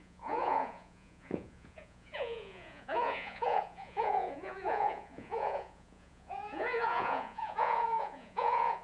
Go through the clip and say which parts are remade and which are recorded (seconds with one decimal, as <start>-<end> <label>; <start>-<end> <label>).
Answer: 0.0-8.8 remade